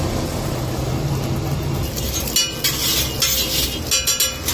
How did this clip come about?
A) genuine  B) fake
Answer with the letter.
A